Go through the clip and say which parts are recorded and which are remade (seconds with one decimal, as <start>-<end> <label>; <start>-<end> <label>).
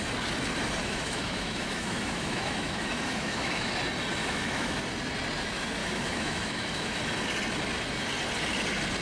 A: 0.0-0.8 recorded; 0.8-3.7 remade; 3.7-4.2 recorded; 4.2-4.8 remade; 4.8-5.8 recorded; 5.8-7.0 remade; 7.0-9.0 recorded